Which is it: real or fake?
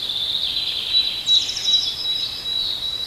real